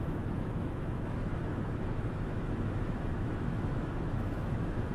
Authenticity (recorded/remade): remade